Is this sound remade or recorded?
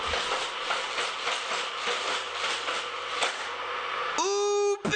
recorded